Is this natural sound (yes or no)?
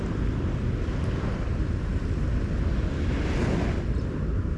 yes